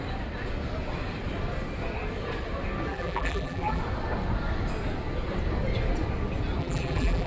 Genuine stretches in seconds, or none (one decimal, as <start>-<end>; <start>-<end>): 0.0-2.9; 3.8-6.6